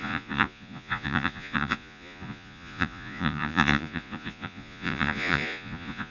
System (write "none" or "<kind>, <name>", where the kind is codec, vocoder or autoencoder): vocoder, Vocos